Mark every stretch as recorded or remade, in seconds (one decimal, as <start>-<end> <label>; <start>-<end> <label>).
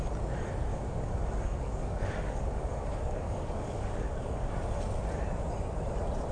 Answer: 0.0-0.7 recorded; 0.7-4.5 remade; 4.5-6.3 recorded